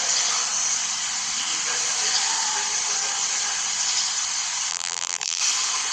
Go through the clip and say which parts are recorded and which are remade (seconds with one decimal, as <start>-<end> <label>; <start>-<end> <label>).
0.0-4.7 recorded; 4.7-5.4 remade; 5.4-5.9 recorded